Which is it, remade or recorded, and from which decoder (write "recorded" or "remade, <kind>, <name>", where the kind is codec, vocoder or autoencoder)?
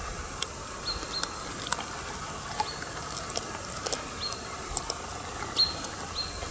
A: recorded